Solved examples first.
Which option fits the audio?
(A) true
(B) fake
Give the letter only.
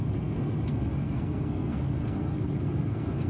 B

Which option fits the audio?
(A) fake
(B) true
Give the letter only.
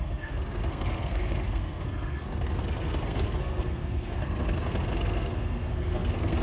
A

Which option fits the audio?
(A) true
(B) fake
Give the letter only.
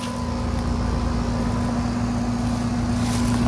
A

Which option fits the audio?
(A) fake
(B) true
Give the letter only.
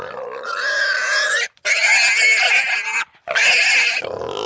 B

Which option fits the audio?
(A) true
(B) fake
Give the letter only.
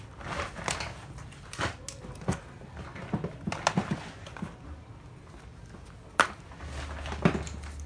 A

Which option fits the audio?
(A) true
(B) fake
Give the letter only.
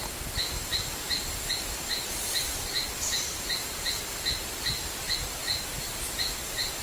A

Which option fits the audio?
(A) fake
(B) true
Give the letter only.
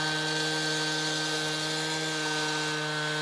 B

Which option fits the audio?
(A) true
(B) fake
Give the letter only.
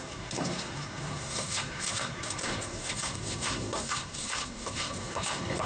B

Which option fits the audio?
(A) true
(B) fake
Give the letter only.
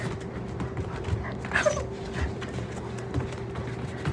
A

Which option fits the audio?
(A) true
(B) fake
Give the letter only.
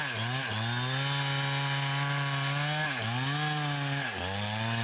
A